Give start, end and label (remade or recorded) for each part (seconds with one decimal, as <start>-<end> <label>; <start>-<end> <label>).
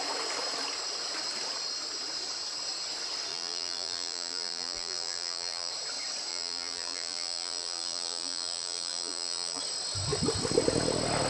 0.0-3.3 recorded; 3.3-5.7 remade; 5.7-6.3 recorded; 6.3-9.6 remade; 9.6-11.3 recorded